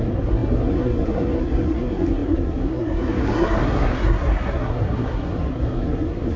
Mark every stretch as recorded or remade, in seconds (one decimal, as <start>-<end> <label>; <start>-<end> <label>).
0.0-6.4 remade